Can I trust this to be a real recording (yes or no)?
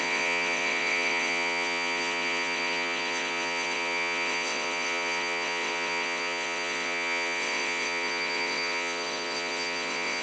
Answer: no